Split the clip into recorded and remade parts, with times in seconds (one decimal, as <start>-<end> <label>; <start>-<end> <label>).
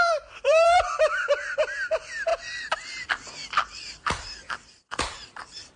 0.0-2.3 remade; 2.3-3.1 recorded; 3.1-5.8 remade